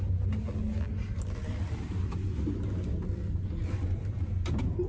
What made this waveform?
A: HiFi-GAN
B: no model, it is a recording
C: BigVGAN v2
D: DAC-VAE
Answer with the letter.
B